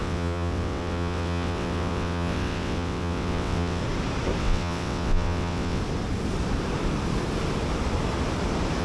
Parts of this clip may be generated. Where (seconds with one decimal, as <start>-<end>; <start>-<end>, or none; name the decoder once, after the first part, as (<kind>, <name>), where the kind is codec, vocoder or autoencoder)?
0.0-3.8 (vocoder, WaveNeXt); 4.4-5.8